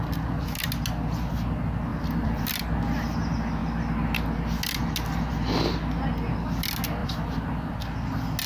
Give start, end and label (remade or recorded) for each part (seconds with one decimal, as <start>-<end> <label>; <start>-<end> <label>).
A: 0.0-1.9 recorded; 1.9-2.6 remade; 2.6-7.0 recorded; 7.0-7.7 remade; 7.7-8.5 recorded